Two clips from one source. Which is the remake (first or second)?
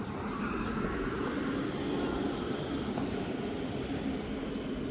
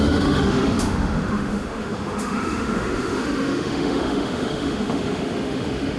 second